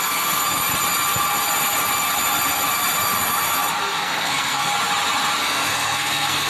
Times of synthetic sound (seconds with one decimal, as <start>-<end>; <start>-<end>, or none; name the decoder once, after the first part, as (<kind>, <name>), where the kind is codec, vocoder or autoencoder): 0.0-0.4 (codec, SNAC); 3.8-4.7; 5.4-6.5

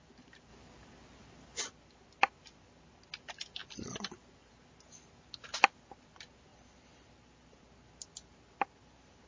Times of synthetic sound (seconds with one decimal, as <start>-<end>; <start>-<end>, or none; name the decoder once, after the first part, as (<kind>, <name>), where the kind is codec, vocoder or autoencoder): none

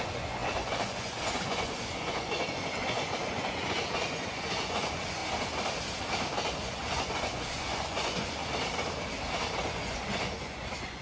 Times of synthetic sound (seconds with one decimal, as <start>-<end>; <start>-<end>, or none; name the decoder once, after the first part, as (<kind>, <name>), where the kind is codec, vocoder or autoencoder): 0.0-5.2 (vocoder, Vocos); 6.6-8.4; 9.6-11.0

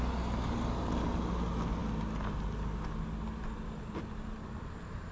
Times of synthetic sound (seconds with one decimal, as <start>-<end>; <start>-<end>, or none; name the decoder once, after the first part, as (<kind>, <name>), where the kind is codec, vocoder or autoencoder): none

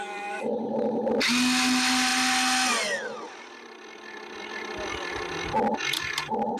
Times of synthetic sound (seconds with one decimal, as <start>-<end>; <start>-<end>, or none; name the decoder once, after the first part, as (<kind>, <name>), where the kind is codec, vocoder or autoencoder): none

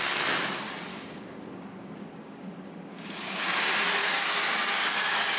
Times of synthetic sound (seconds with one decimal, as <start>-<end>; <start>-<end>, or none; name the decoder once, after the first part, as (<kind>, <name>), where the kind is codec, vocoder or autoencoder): 0.9-3.5 (codec, DAC); 4.0-5.4

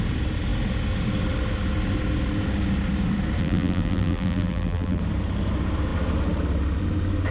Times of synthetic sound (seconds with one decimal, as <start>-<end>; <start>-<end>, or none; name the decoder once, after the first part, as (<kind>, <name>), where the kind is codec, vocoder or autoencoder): 3.4-5.0 (vocoder, BigVGAN v2)